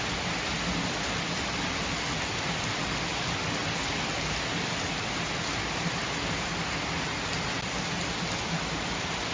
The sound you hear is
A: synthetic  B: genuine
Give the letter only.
B